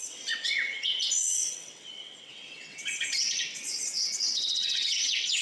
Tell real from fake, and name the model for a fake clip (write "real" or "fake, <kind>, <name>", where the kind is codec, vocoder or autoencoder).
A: fake, vocoder, WaveNeXt